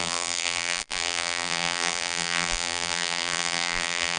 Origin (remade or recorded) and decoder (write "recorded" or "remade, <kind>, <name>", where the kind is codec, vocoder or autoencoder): remade, vocoder, BigVGAN v2